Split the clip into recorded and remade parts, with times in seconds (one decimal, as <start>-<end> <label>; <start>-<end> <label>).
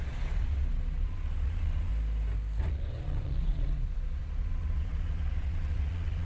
0.0-1.9 remade; 1.9-2.6 recorded; 2.6-6.2 remade